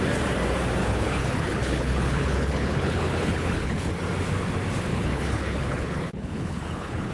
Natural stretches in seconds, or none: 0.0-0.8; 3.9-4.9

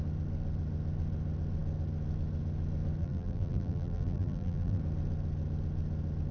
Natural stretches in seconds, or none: 0.0-3.0; 4.8-6.3

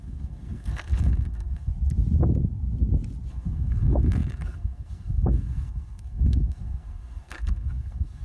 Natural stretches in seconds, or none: 1.7-3.3

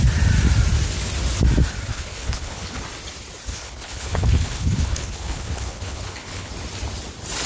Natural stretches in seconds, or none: 0.0-1.9; 2.8-3.5; 6.5-7.5

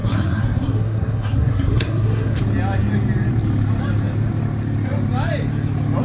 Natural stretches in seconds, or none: 2.4-6.0

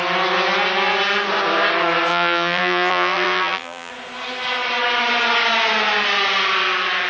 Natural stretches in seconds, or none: 0.0-2.1; 3.9-7.1

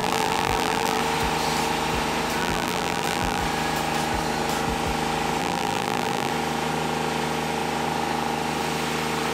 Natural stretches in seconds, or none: 1.0-2.4; 3.4-5.4; 6.3-9.3

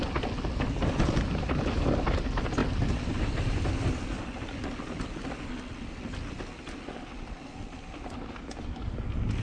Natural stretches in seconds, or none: 0.0-9.4